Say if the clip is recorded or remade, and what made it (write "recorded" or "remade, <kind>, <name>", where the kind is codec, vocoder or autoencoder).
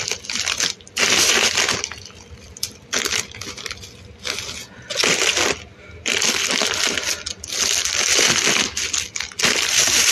recorded